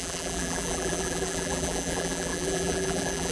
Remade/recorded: remade